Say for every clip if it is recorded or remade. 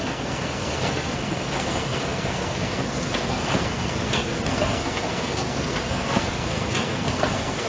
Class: remade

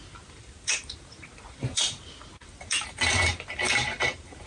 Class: remade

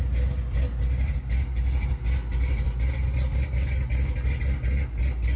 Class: recorded